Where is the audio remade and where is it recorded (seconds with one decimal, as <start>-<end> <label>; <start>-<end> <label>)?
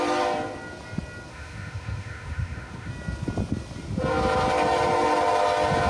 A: 0.0-1.3 recorded; 1.3-2.9 remade; 2.9-5.9 recorded